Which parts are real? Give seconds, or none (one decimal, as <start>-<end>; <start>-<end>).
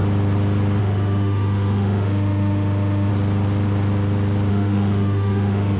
0.0-0.8; 3.1-4.5